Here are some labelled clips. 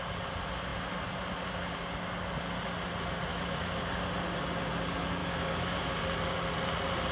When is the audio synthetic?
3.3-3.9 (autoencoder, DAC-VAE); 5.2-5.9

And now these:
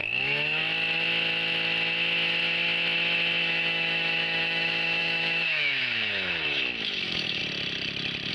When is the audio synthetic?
0.0-0.6 (autoencoder, DAC-VAE); 3.4-7.4